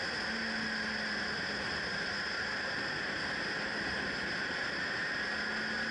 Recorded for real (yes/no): yes